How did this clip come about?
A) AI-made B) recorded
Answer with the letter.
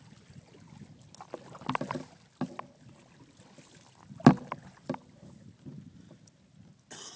B